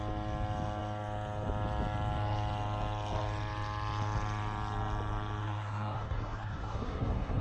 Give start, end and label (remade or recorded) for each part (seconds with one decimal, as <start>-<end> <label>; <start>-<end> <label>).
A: 0.0-5.4 recorded; 5.4-7.4 remade